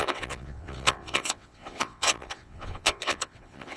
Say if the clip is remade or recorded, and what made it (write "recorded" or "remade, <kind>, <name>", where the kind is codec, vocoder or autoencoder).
remade, vocoder, WaveNeXt